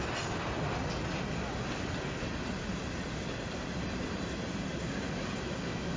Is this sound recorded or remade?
recorded